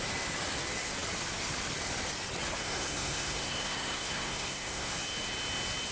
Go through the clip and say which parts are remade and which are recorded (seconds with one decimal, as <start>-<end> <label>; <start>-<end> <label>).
0.0-2.6 recorded; 2.6-4.9 remade; 4.9-5.9 recorded